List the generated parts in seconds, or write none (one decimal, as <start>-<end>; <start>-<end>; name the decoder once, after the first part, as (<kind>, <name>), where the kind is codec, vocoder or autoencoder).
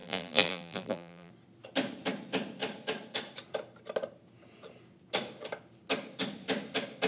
0.0-1.3 (vocoder, BigVGAN v2)